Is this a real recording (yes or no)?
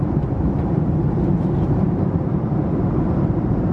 no